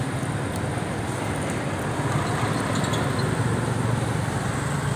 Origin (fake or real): real